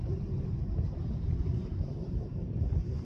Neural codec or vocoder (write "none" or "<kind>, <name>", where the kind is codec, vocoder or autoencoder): vocoder, BigVGAN v2